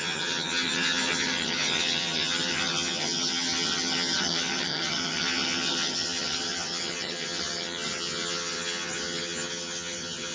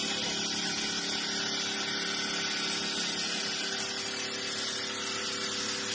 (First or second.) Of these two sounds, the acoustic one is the second